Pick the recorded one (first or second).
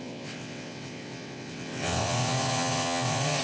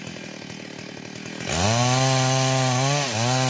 second